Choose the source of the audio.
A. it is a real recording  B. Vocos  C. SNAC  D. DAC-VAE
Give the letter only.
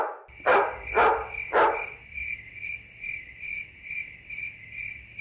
A